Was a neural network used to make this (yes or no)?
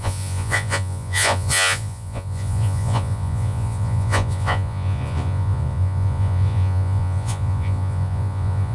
yes